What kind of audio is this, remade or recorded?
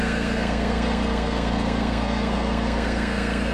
remade